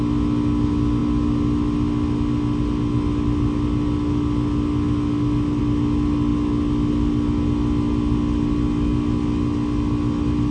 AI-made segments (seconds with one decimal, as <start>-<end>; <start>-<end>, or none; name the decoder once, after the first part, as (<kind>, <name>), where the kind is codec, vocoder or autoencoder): none

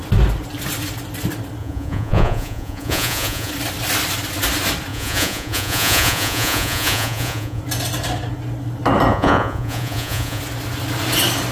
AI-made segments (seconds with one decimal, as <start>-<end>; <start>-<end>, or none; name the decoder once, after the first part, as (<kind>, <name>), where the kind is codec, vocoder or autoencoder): 1.6-3.5 (vocoder, Vocos); 4.9-7.6; 9.1-10.4

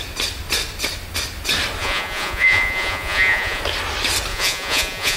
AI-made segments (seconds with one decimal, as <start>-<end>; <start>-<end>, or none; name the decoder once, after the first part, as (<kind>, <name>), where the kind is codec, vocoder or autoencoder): 1.8-3.6 (vocoder, Vocos); 4.3-5.2